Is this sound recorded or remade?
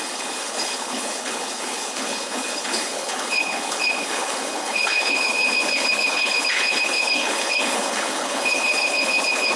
remade